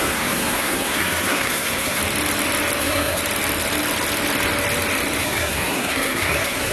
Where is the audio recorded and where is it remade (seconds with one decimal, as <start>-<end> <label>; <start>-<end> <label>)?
0.0-2.0 remade; 2.0-2.8 recorded; 2.8-3.2 remade; 3.2-5.2 recorded; 5.2-6.7 remade